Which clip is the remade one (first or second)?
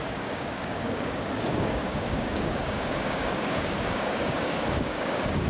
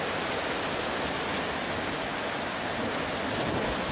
first